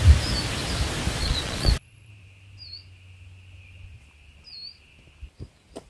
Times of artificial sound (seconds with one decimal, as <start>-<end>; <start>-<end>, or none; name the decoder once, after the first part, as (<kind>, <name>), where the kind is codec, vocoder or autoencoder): 1.2-2.1 (vocoder, Vocos)